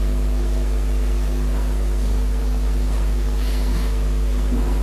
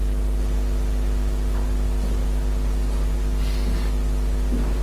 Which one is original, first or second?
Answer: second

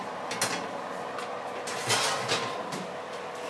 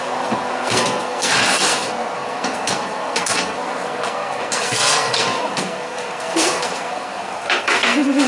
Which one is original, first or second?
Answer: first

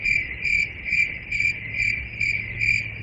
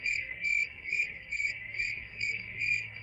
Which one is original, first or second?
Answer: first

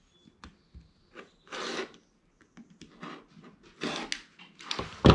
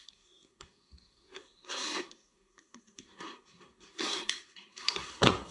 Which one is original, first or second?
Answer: first